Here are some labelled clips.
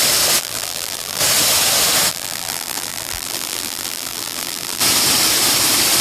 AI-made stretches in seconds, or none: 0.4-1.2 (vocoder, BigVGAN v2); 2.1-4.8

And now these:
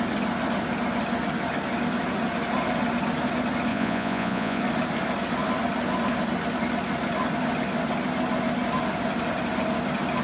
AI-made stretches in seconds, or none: 3.7-4.6 (vocoder, Vocos)

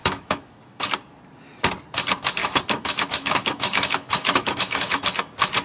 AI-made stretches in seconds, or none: 0.0-0.9 (autoencoder, DAC-VAE); 2.4-5.0

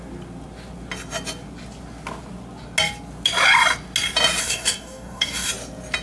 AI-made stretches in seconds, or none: 4.4-5.5 (codec, DAC)

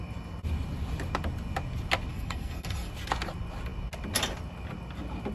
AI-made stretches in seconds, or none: 2.1-2.9 (codec, SNAC)

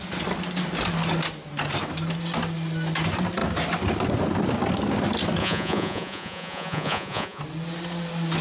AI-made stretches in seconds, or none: 5.4-7.4 (vocoder, Vocos)

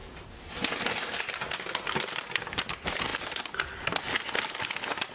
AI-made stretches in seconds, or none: none